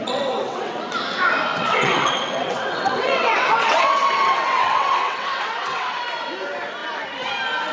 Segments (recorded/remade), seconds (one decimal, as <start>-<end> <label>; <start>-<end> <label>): 0.0-0.8 remade; 0.8-1.5 recorded; 1.5-6.0 remade; 6.0-7.7 recorded